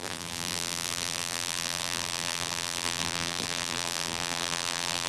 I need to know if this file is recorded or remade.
remade